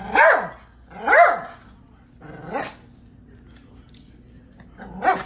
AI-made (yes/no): no